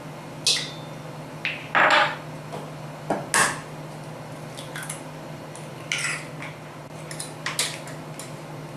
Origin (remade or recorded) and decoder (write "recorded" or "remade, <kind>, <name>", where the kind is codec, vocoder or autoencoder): recorded